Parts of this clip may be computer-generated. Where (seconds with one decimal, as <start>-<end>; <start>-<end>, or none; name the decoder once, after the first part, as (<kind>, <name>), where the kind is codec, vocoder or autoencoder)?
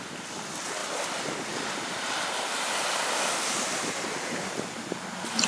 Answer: none